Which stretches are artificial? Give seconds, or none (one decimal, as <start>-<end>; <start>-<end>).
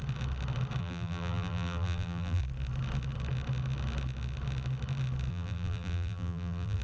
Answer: 0.8-2.4; 5.3-6.8